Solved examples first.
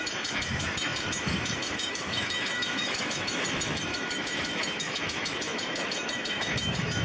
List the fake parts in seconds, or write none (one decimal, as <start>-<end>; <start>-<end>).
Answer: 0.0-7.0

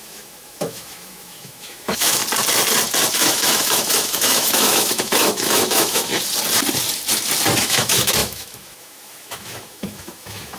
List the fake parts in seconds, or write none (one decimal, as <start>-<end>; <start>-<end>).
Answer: 0.0-2.2; 3.1-6.1; 7.6-10.6

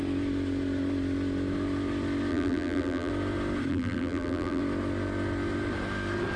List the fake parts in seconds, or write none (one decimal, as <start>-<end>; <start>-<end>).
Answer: 2.3-3.1; 3.7-4.6